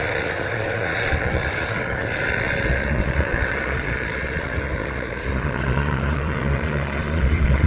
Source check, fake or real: fake